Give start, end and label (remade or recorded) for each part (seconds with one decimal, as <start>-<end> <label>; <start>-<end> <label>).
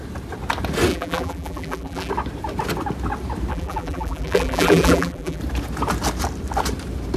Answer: 0.0-0.9 recorded; 0.9-2.1 remade; 2.1-3.5 recorded; 3.5-5.4 remade; 5.4-7.2 recorded